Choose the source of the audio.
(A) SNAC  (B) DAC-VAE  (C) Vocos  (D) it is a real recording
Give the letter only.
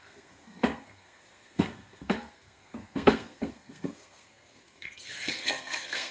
A